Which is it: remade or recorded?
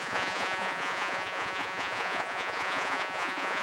remade